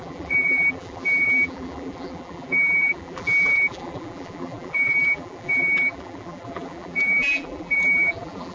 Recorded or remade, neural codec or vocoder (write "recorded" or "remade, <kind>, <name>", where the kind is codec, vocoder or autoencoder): remade, vocoder, BigVGAN v2